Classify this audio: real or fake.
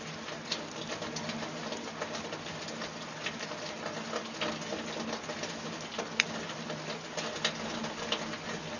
real